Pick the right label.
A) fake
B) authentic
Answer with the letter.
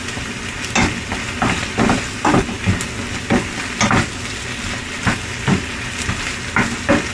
B